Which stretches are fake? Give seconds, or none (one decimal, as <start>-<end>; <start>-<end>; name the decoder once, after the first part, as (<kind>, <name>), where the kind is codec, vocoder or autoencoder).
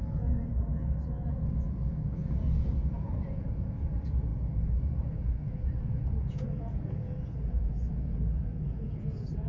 0.0-9.5 (vocoder, Vocos)